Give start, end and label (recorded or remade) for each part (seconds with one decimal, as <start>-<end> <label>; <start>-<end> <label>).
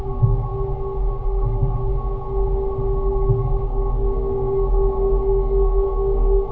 0.0-0.5 remade; 0.5-1.1 recorded; 1.1-1.9 remade; 1.9-3.0 recorded; 3.0-6.5 remade